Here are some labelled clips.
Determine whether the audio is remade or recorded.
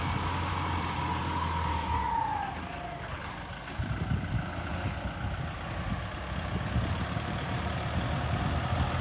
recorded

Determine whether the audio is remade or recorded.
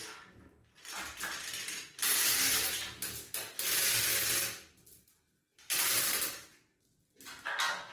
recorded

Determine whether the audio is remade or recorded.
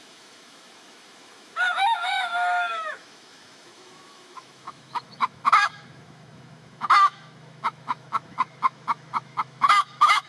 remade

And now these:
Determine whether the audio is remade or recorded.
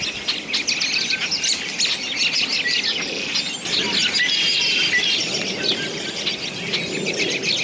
recorded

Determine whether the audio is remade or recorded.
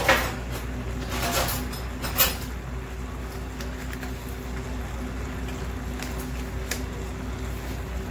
recorded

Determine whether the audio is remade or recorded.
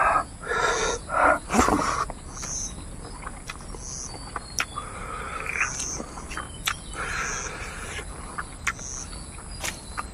recorded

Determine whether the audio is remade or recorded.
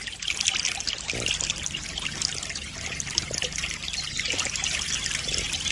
recorded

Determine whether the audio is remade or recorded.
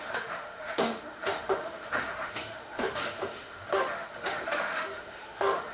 remade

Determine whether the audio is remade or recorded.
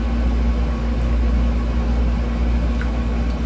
recorded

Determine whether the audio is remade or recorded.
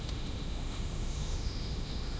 remade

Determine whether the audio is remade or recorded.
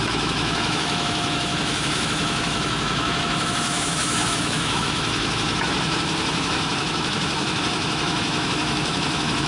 remade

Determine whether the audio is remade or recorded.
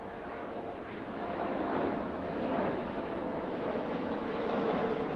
remade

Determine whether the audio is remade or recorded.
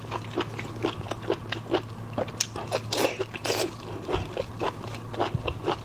recorded